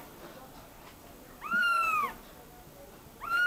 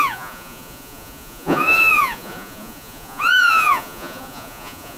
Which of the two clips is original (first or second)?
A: first